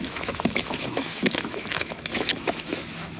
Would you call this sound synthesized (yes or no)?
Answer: yes